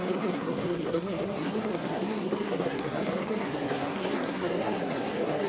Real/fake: fake